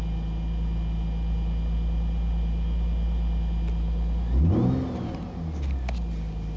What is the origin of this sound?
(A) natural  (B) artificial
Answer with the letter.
A